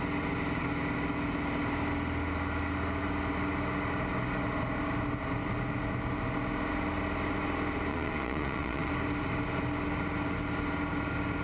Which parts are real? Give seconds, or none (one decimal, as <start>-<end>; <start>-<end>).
0.0-7.9; 8.9-11.4